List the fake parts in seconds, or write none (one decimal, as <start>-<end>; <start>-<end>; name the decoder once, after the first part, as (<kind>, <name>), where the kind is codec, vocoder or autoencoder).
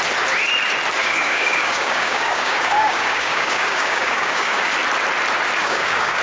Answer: 1.0-4.7 (codec, DAC); 5.6-6.2